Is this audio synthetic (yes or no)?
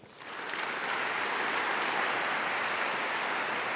no